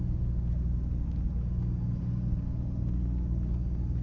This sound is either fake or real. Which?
real